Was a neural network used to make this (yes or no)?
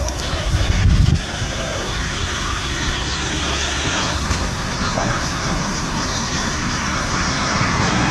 yes